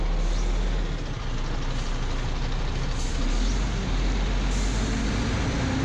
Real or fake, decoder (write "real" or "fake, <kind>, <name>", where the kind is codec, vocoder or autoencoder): real